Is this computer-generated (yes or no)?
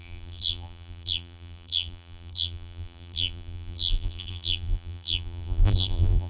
yes